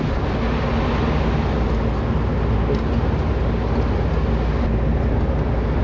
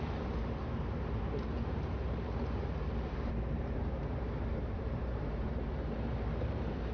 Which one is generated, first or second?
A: second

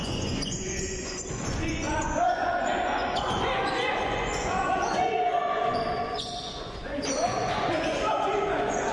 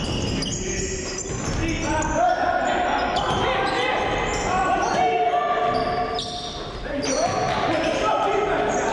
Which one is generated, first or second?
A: first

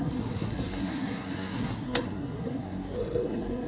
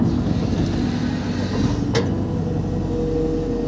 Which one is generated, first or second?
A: first